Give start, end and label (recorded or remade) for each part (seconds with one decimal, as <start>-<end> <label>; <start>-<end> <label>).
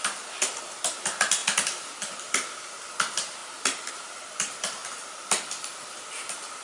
0.0-1.4 recorded; 1.4-1.9 remade; 1.9-6.6 recorded